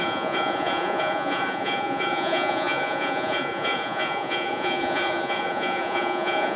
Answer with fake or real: fake